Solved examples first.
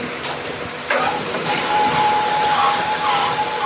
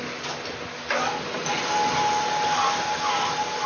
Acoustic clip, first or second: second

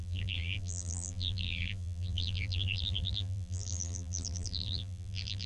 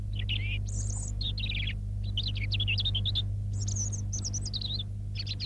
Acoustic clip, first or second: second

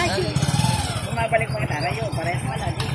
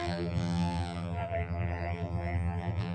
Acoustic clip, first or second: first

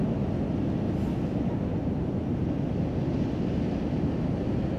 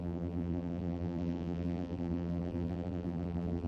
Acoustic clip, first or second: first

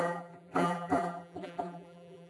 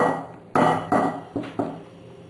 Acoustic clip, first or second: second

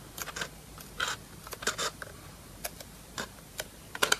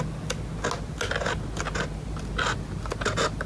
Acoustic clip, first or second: second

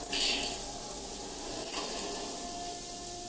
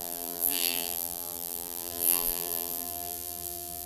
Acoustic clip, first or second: first